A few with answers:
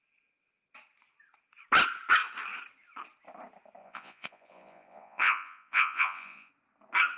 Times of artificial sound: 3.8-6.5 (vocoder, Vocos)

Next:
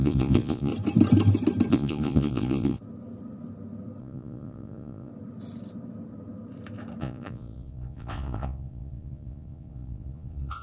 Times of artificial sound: 0.0-0.7 (vocoder, Vocos); 1.7-2.8; 4.0-5.1; 7.0-10.6

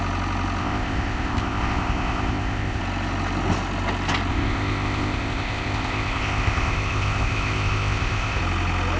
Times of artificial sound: 0.6-2.8 (codec, ZipCodec); 4.3-8.4

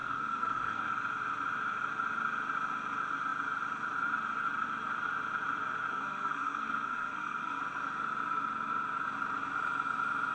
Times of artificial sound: 0.0-0.9 (codec, SNAC); 5.9-7.6

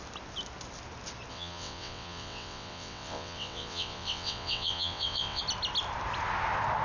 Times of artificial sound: 1.3-5.4 (vocoder, WaveNeXt)

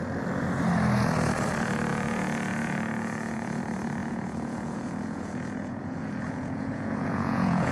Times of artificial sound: 1.9-3.6 (vocoder, Vocos); 4.0-7.7

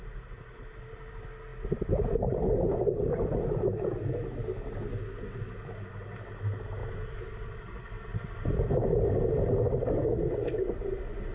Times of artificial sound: 6.8-9.3 (vocoder, BigVGAN v2)

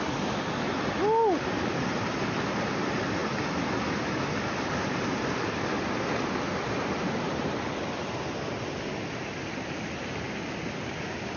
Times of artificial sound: none